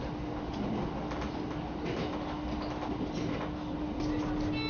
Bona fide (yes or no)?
yes